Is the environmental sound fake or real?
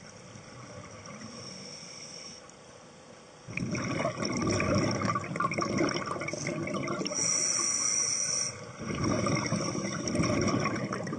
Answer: real